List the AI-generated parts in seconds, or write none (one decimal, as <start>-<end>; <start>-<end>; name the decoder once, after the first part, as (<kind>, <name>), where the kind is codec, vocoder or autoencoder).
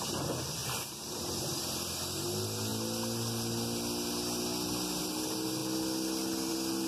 none